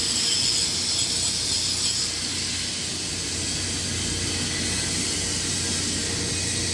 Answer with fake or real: real